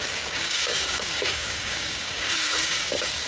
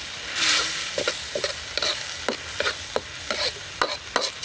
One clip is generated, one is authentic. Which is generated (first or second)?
first